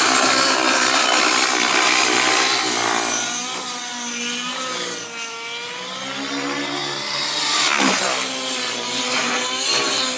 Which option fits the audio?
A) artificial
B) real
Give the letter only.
B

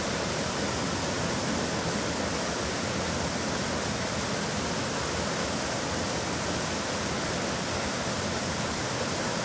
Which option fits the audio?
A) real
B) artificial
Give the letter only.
A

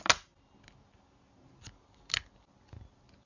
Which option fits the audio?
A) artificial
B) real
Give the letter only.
B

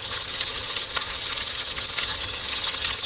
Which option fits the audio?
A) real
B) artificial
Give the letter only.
B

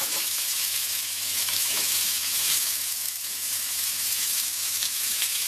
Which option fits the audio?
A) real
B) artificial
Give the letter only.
B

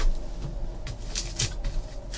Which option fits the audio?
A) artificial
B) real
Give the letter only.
B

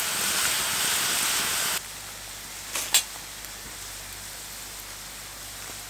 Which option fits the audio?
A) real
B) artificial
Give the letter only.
A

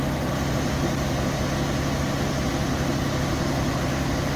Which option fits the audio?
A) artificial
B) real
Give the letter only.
B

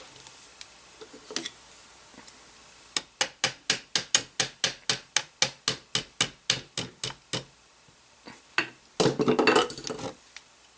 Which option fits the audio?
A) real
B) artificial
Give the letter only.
A